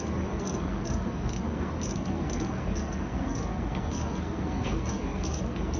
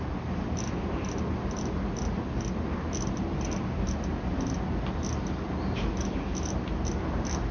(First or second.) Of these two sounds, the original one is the second